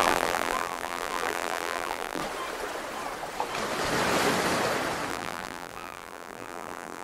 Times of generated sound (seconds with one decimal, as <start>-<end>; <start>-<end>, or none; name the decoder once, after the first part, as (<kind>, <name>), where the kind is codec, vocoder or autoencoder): 0.0-2.2 (vocoder, BigVGAN v2); 5.1-7.0